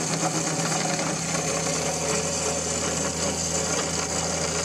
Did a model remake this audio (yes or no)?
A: no